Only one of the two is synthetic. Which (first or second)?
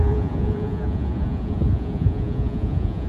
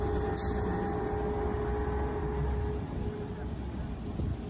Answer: first